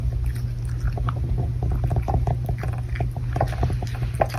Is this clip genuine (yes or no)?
yes